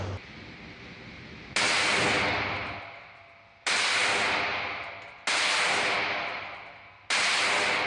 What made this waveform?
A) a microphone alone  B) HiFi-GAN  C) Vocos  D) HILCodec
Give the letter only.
A